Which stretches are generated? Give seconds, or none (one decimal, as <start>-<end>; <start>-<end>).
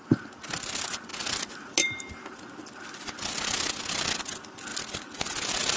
none